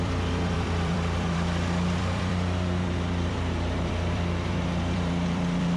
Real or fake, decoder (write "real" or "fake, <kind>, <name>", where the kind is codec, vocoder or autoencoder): fake, vocoder, BigVGAN v2